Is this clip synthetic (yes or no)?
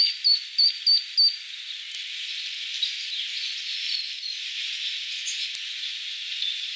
no